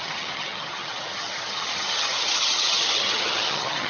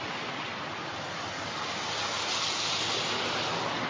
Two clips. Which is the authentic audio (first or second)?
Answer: second